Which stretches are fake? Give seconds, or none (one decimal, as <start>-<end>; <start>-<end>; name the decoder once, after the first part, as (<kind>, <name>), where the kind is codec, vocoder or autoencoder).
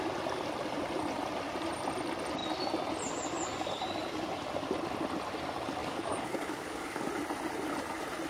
5.8-7.1 (codec, DAC)